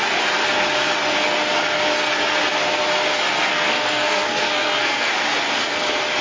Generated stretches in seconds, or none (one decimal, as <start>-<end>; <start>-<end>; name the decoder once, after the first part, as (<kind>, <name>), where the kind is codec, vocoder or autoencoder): 3.5-5.1 (codec, SNAC)